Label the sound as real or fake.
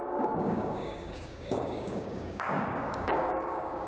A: fake